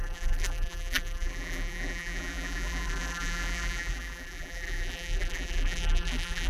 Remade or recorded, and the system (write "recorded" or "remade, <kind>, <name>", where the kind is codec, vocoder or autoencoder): remade, vocoder, BigVGAN v2